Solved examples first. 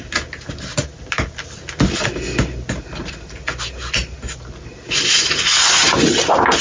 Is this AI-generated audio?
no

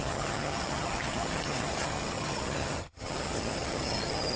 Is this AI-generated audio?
yes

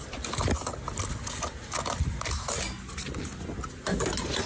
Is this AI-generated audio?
no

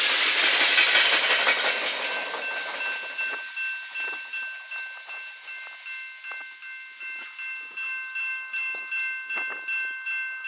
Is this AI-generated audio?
no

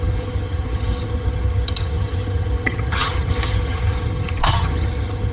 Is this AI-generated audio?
yes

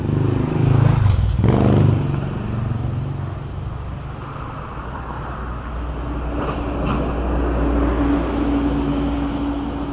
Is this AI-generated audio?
no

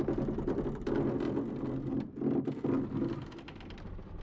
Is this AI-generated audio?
no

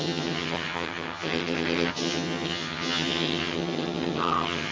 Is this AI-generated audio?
yes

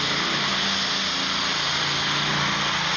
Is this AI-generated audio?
no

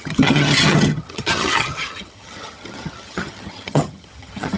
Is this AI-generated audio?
yes